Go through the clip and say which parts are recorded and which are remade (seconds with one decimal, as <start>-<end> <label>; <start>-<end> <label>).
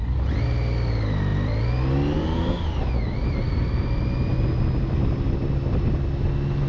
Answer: 0.0-6.7 recorded